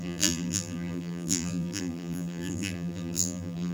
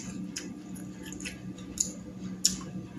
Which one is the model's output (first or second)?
first